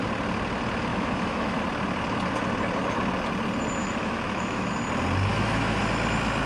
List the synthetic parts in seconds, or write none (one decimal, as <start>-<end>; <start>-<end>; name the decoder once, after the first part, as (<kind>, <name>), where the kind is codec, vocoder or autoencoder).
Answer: 0.9-1.6 (autoencoder, DAC-VAE); 3.8-4.7; 5.3-5.8